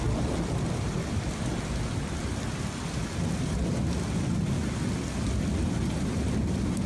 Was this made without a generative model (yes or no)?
yes